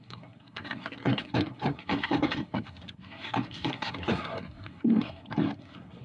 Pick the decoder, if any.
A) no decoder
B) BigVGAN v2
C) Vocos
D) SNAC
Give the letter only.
D